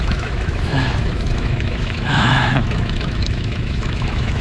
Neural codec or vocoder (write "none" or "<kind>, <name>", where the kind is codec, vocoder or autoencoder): autoencoder, DAC-VAE